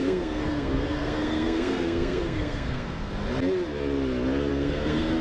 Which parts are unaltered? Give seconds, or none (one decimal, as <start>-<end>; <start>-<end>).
3.1-4.5